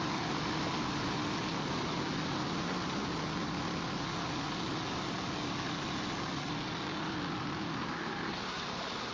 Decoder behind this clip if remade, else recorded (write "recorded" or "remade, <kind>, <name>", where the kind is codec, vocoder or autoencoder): recorded